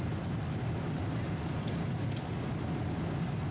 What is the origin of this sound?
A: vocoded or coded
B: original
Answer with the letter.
B